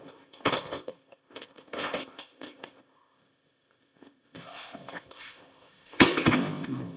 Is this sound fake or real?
fake